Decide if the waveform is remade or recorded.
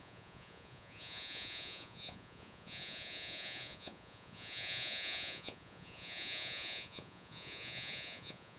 remade